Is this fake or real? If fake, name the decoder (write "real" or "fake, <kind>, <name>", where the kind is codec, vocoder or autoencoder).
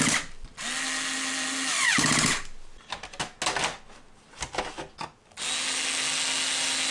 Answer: real